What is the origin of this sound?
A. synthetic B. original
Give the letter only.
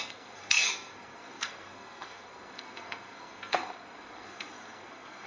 A